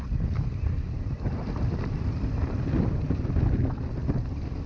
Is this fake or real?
real